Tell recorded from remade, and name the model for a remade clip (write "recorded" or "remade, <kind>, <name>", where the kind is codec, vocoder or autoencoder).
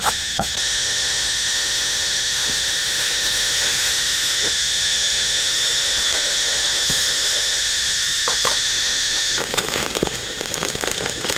remade, autoencoder, DAC-VAE